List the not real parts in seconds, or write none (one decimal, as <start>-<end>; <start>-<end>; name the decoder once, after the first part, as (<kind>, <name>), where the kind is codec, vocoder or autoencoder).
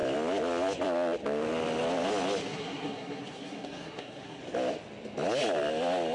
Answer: 2.4-4.4 (codec, SNAC)